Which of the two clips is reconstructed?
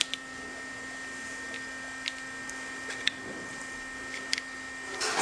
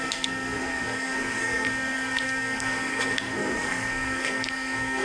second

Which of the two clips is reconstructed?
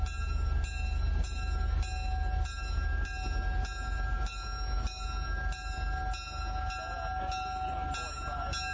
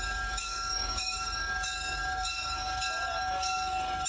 second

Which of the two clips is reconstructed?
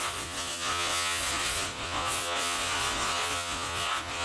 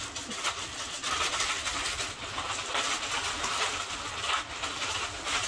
first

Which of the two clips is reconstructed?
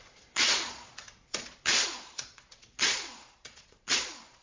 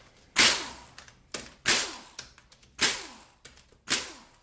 first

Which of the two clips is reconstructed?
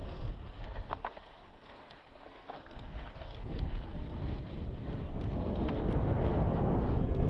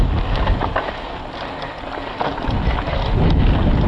first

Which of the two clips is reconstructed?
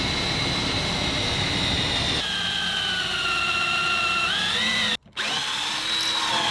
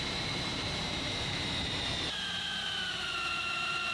second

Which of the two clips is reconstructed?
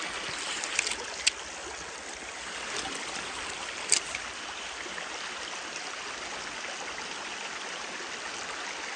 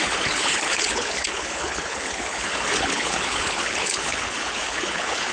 second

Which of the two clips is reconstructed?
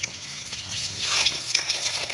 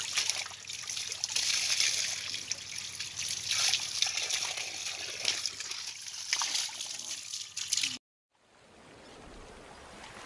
first